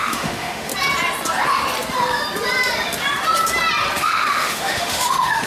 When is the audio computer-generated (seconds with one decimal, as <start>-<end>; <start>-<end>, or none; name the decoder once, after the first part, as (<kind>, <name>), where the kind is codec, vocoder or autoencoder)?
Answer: 0.0-0.7 (autoencoder, DAC-VAE); 4.0-5.5